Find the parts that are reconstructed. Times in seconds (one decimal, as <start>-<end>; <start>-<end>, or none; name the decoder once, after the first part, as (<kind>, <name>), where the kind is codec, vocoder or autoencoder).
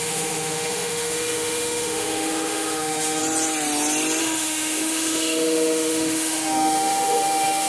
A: 0.0-3.2 (autoencoder, DAC-VAE); 4.2-7.7